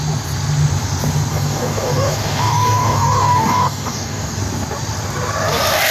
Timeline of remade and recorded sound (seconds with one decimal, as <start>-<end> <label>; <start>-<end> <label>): 0.0-1.3 recorded; 1.3-4.4 remade; 4.4-5.9 recorded